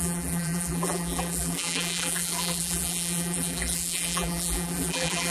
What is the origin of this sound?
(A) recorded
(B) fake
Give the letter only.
B